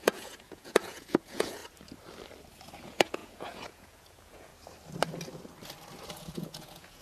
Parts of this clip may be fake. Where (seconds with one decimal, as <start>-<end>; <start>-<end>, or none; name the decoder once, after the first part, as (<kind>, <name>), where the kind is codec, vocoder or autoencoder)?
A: 0.0-1.6 (vocoder, Vocos); 2.8-4.5; 6.2-7.0